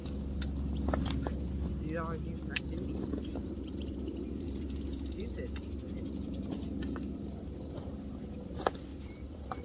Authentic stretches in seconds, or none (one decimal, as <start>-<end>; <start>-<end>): 0.0-3.3; 7.9-8.9